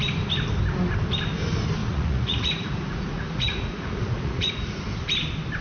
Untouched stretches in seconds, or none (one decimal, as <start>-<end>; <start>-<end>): 0.0-1.8; 4.5-5.6